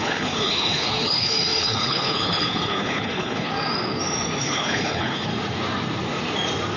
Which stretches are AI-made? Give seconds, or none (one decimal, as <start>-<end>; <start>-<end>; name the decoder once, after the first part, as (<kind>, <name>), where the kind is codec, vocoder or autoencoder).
0.0-3.5 (codec, HILCodec); 4.4-5.3

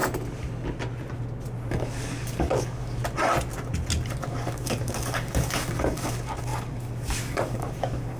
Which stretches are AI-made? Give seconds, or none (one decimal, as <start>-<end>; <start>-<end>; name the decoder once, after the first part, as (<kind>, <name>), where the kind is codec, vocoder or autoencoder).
1.7-3.0 (codec, DAC); 4.2-8.2

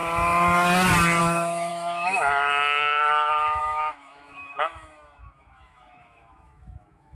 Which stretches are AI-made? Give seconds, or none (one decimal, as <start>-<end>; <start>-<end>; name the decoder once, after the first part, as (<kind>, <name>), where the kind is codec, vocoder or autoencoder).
1.2-7.1 (autoencoder, DAC-VAE)

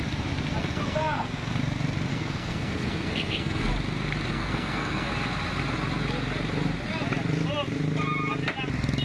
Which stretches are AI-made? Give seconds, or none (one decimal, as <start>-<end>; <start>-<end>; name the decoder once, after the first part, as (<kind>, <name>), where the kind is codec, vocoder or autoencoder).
0.6-1.6 (codec, SNAC); 2.1-3.7; 4.3-5.1

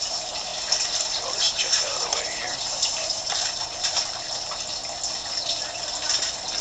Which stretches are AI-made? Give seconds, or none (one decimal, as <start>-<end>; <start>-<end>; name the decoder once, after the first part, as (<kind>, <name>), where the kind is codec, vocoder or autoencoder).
0.0-0.5 (vocoder, BigVGAN v2); 1.1-4.8